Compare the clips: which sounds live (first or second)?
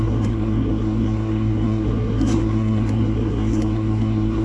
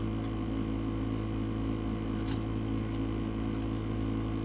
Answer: second